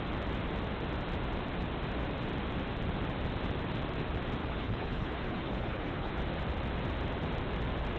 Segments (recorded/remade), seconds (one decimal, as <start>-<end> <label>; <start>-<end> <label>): 0.0-4.4 recorded; 4.4-6.1 remade; 6.1-8.0 recorded